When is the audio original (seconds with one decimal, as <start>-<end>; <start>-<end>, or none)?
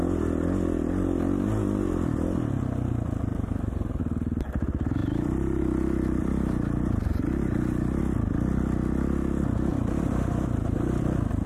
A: 0.0-3.3; 4.0-5.0; 5.6-6.2; 8.0-9.7; 11.0-11.5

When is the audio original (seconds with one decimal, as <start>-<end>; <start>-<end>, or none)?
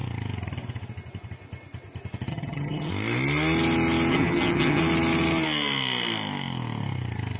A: 0.0-2.3; 2.9-4.1; 4.8-7.4